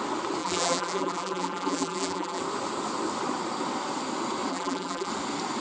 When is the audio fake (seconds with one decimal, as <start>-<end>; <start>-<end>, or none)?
0.4-2.4; 4.5-5.1